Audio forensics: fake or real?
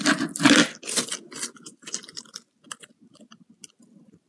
real